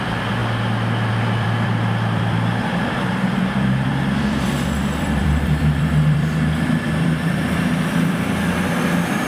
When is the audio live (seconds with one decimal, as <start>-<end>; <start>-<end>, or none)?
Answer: 0.4-1.1